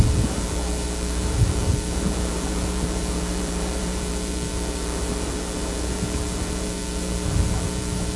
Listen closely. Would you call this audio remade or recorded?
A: remade